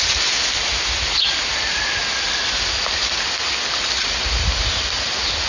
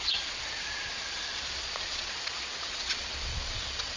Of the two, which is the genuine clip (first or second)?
first